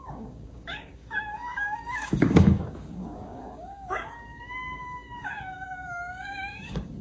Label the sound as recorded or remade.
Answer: remade